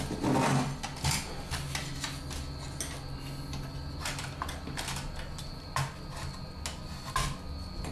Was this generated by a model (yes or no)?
no